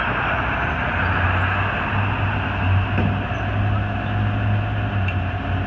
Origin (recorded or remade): recorded